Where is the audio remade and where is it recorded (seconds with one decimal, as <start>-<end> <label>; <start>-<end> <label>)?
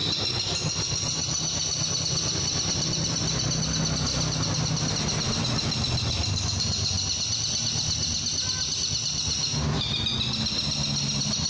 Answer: 0.0-11.5 recorded